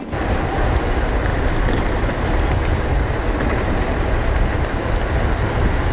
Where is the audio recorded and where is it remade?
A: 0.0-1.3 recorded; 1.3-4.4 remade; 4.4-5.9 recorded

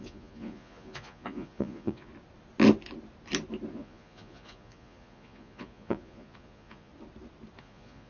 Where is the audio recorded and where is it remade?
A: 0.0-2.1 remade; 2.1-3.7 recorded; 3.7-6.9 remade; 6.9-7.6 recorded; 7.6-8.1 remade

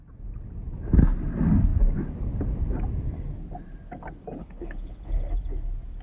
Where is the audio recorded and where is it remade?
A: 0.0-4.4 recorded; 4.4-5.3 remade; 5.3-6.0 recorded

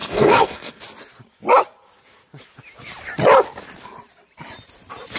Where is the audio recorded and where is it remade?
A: 0.0-0.8 remade; 0.8-5.2 recorded

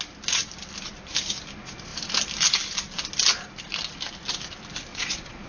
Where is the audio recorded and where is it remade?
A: 0.0-4.9 recorded; 4.9-5.5 remade